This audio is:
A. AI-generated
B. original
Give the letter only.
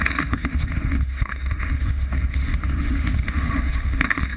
A